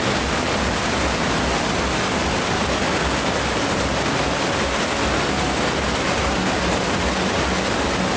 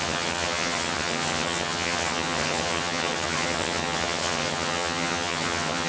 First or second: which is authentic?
first